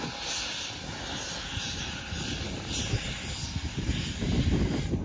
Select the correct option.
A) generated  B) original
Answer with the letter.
B